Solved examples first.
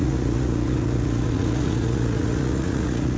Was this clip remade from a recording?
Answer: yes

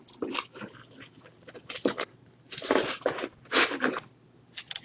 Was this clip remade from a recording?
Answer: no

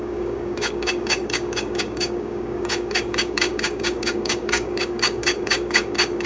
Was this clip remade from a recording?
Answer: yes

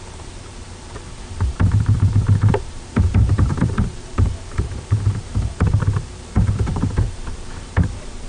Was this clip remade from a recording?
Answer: yes